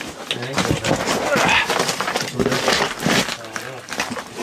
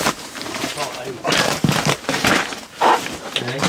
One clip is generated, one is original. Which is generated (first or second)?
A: second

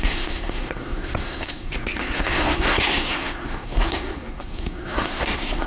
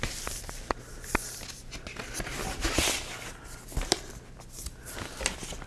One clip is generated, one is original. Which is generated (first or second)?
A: first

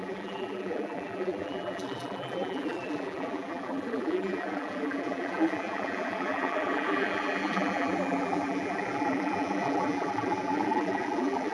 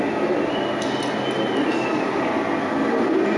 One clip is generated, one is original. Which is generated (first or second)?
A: first